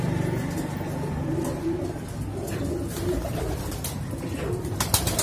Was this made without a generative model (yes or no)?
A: yes